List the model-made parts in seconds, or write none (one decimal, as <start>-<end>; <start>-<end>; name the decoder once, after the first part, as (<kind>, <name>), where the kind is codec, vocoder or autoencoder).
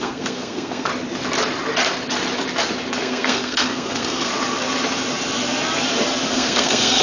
0.0-0.9 (codec, SNAC); 2.9-4.3; 6.3-7.0